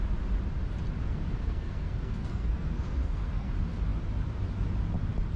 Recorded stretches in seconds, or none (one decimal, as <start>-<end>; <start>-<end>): 0.0-1.0; 3.5-5.4